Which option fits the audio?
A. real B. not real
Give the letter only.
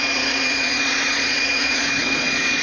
B